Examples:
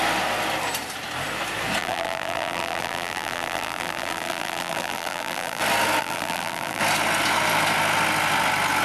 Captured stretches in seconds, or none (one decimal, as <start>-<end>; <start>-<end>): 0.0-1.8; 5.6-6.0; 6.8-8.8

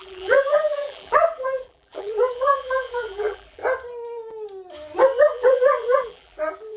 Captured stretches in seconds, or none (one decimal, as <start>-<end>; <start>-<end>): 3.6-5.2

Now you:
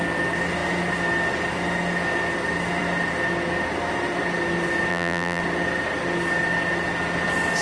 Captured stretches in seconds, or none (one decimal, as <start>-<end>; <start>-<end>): 0.0-4.9; 5.4-7.6

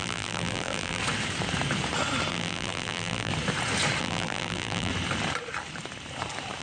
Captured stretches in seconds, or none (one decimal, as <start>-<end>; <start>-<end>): 1.0-2.3; 3.3-4.0; 4.9-6.6

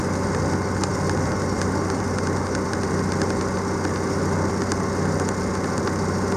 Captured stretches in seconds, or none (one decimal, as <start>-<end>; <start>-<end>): 0.0-6.4